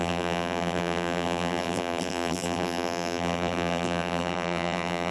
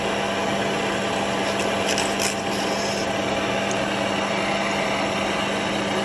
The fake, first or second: first